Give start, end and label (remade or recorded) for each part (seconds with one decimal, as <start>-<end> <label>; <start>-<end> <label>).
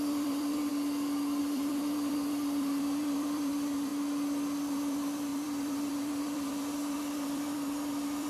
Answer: 0.0-0.7 remade; 0.7-1.4 recorded; 1.4-3.9 remade; 3.9-4.7 recorded; 4.7-8.3 remade